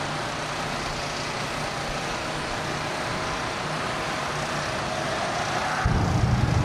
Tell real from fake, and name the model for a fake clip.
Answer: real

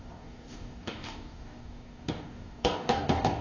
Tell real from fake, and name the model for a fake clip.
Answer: fake, codec, DAC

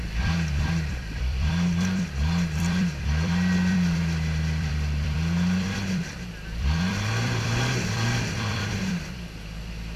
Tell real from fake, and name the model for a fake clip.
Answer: fake, vocoder, BigVGAN v2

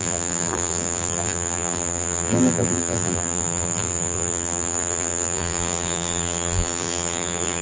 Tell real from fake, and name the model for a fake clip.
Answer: fake, vocoder, BigVGAN v2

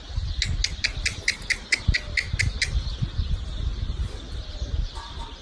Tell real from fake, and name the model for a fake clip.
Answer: real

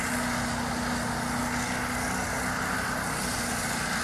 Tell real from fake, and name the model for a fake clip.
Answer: real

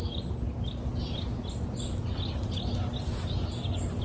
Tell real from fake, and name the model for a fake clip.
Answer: real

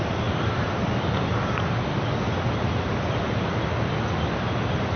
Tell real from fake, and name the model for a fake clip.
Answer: real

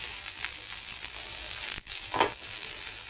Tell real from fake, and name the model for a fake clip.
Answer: fake, vocoder, BigVGAN v2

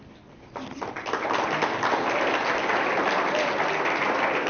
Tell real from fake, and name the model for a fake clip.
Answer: real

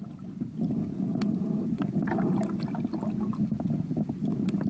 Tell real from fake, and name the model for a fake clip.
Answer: real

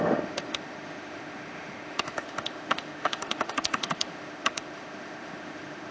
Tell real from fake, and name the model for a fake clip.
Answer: fake, autoencoder, DAC-VAE